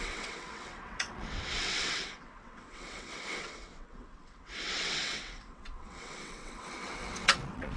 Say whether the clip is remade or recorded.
remade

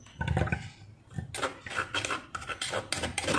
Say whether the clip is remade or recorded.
recorded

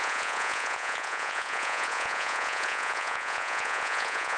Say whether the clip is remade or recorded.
remade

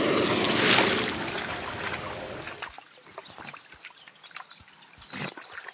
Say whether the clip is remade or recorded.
recorded